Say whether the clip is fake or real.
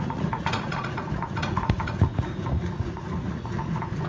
fake